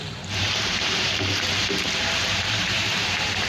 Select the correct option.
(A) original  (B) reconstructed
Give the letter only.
B